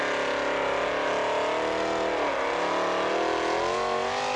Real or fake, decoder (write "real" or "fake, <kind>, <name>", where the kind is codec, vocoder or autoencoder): real